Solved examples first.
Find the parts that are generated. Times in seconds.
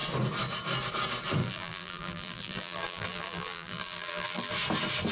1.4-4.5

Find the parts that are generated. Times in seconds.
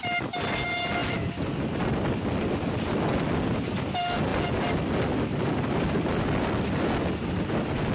none